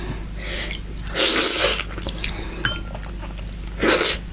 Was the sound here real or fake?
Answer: real